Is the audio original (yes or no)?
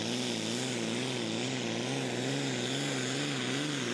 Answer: yes